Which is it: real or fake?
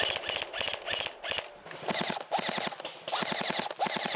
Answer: real